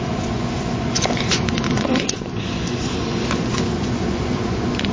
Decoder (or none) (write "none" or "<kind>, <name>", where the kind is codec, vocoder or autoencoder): vocoder, Vocos